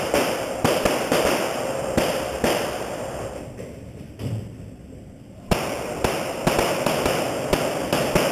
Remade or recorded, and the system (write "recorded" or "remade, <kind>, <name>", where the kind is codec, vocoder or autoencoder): remade, vocoder, BigVGAN v2